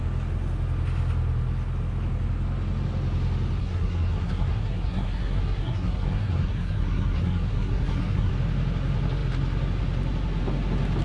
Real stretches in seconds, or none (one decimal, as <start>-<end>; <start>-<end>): 0.0-3.6; 8.3-11.0